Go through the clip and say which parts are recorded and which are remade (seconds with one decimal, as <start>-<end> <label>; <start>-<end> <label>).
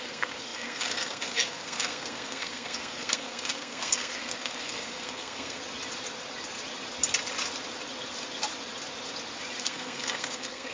0.0-5.6 remade; 5.6-9.6 recorded; 9.6-10.7 remade